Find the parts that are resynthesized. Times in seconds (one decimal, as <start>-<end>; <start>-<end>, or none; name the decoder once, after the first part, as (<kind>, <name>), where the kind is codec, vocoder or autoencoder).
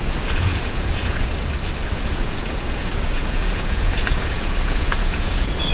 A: 0.0-1.3 (vocoder, Vocos); 1.9-5.7